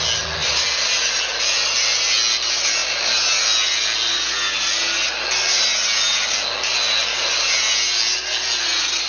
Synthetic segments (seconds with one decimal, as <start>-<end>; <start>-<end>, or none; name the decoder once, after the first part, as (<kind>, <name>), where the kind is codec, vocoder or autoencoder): 0.4-1.3 (vocoder, BigVGAN v2); 7.0-7.6